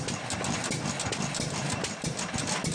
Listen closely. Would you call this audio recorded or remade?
recorded